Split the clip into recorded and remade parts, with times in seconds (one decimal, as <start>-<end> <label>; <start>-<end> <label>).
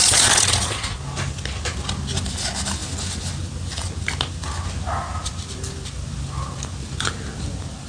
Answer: 0.0-1.0 remade; 1.0-7.9 recorded